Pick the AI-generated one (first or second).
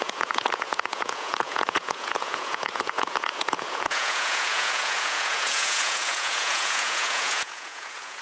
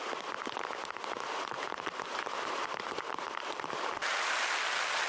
first